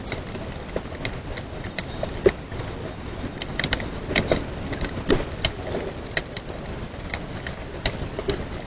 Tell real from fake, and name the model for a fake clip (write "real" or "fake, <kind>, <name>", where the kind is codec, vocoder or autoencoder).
real